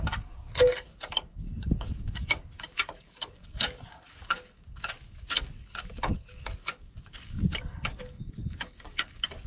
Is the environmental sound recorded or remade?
remade